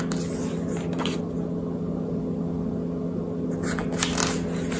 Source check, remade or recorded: recorded